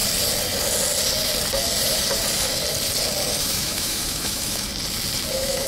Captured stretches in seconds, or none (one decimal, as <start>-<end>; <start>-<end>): 0.0-3.4; 4.7-5.3

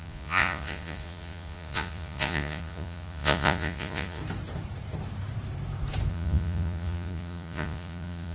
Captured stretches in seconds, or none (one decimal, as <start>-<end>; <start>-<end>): 4.2-6.1